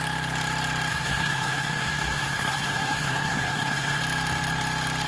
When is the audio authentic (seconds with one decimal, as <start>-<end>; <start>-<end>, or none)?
0.0-0.9; 4.0-5.1